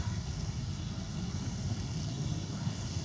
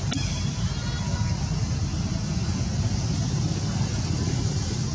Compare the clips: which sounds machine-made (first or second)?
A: first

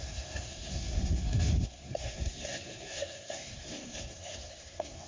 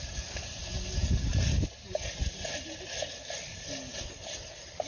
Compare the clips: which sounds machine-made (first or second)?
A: first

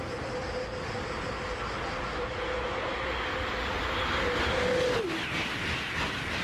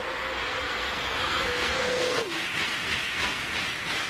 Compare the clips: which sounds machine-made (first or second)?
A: second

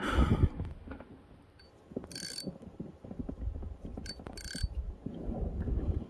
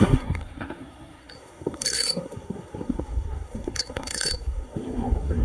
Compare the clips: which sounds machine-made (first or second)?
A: second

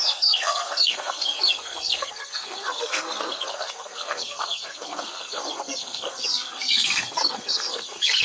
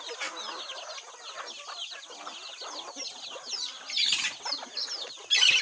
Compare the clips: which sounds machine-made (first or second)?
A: first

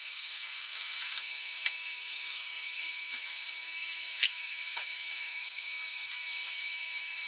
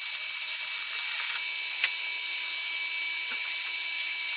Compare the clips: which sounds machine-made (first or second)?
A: first